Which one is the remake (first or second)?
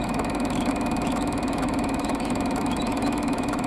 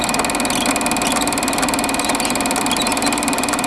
first